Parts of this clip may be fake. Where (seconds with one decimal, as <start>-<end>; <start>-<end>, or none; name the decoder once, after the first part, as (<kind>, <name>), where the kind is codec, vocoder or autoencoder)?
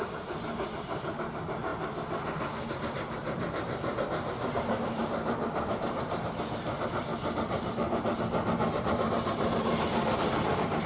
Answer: 0.0-1.7 (vocoder, BigVGAN v2); 2.7-7.1; 8.8-10.9